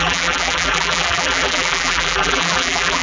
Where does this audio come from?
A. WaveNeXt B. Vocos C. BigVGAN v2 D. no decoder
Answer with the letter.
C